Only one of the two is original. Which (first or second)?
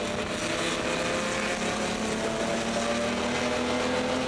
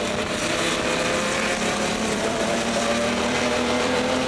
first